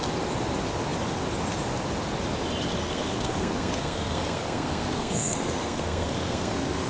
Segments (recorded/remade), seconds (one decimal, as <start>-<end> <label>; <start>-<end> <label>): 0.0-2.8 recorded; 2.8-6.9 remade